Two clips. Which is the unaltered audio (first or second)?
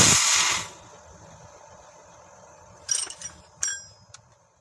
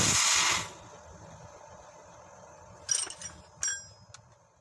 second